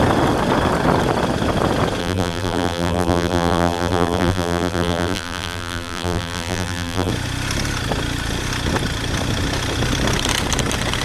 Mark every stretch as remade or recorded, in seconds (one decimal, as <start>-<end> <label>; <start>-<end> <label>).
0.0-2.0 recorded; 2.0-7.1 remade; 7.1-11.0 recorded